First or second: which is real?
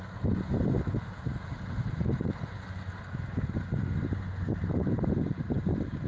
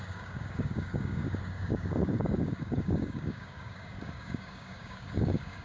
first